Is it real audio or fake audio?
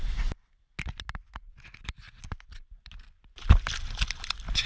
real